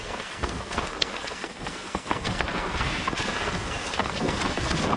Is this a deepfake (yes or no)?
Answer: yes